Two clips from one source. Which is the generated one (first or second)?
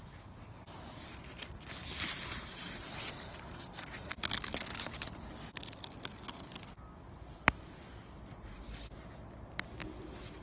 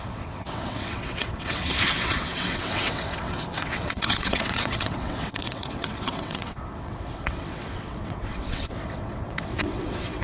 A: second